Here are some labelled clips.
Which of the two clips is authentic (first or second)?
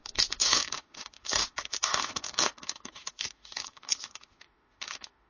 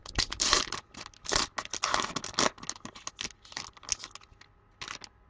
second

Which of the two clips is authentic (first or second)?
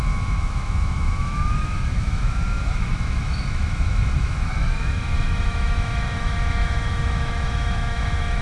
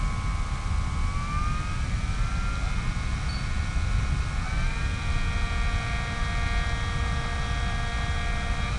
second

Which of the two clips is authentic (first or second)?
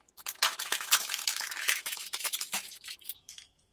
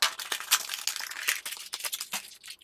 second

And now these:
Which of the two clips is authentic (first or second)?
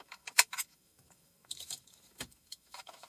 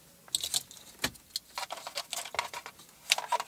second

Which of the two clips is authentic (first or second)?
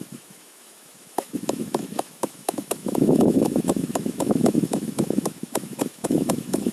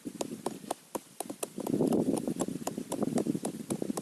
second